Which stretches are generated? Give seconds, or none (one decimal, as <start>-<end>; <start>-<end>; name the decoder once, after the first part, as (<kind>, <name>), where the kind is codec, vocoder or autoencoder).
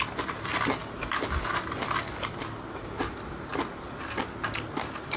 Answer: none